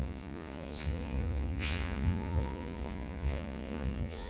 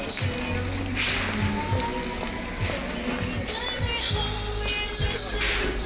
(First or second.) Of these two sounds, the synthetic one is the first